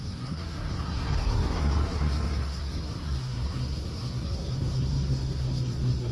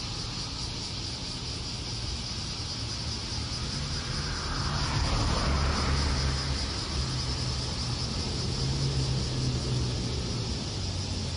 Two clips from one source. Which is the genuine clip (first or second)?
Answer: second